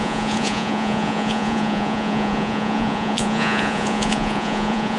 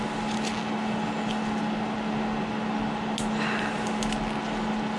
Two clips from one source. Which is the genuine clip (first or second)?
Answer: second